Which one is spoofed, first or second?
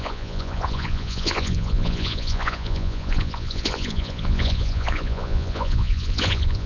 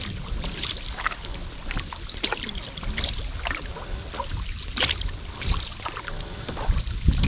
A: first